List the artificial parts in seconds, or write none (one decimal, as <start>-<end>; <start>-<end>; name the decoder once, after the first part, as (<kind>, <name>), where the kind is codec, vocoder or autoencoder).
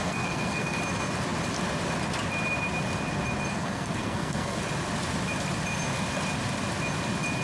0.0-0.8 (codec, SNAC); 3.6-4.6